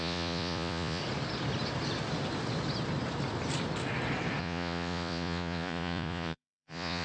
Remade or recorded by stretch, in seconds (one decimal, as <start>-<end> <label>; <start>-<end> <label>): 0.0-1.0 remade; 1.0-4.4 recorded; 4.4-7.0 remade